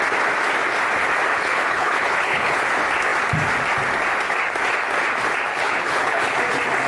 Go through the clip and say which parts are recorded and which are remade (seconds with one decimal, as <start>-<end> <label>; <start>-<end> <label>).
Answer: 0.0-1.3 recorded; 1.3-2.6 remade; 2.6-5.5 recorded; 5.5-6.2 remade; 6.2-6.9 recorded